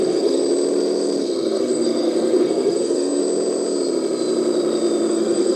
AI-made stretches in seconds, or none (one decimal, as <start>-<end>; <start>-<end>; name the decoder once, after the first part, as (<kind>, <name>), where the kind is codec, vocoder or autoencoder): 0.0-0.4 (codec, SNAC); 1.2-3.2; 5.1-5.6